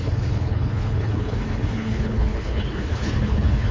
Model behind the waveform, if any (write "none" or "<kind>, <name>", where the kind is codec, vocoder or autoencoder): codec, HILCodec